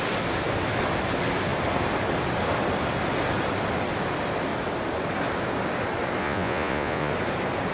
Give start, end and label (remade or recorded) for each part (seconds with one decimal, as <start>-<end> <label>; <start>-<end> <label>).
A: 0.0-6.2 recorded; 6.2-7.1 remade; 7.1-7.7 recorded